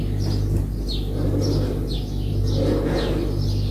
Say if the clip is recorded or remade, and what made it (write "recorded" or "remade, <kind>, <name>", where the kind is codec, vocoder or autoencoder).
recorded